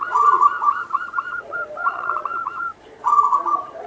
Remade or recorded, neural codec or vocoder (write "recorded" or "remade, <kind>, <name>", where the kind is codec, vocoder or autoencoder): remade, vocoder, Vocos